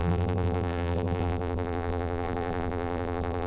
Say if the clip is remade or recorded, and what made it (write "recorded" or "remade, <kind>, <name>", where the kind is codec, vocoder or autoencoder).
remade, vocoder, BigVGAN v2